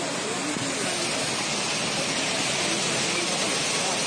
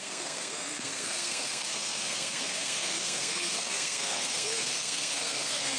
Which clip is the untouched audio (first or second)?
first